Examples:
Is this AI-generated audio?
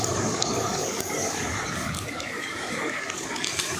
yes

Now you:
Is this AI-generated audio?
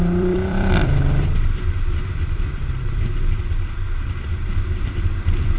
yes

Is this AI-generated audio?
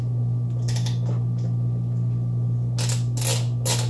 no